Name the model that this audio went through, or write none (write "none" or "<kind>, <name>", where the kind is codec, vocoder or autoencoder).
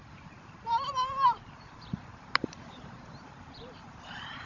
vocoder, BigVGAN v2